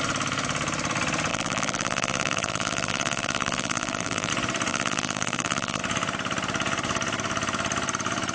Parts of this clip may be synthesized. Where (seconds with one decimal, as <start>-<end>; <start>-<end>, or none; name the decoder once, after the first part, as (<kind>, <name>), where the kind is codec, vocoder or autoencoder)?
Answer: 1.3-4.3 (vocoder, BigVGAN v2); 4.7-5.8